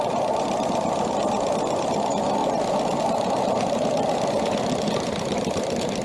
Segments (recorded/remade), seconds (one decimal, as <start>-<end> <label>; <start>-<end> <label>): 0.0-6.0 recorded